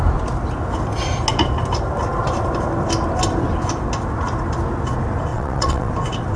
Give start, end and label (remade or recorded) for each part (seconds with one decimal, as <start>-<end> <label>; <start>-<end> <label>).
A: 0.0-5.3 recorded; 5.3-5.9 remade; 5.9-6.4 recorded